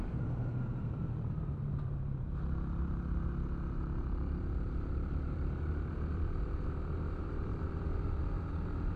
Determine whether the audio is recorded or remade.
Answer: remade